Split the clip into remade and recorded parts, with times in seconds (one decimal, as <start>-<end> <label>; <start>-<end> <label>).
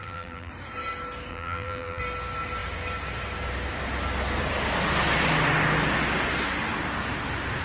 0.0-0.5 remade; 0.5-1.3 recorded; 1.3-2.0 remade; 2.0-7.6 recorded